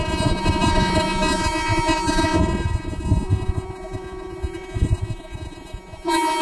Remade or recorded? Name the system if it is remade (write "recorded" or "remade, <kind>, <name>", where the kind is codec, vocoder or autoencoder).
remade, vocoder, Vocos